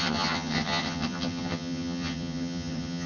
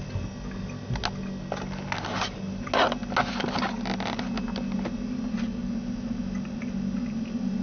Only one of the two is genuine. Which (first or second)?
second